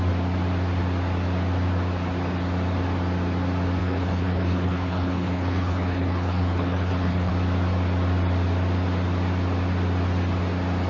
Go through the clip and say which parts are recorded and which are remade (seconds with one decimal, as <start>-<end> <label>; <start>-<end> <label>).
0.0-3.8 recorded; 3.8-7.3 remade; 7.3-10.9 recorded